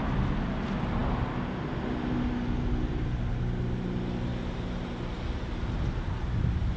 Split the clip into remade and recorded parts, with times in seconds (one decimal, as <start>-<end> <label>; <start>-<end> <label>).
0.0-6.8 recorded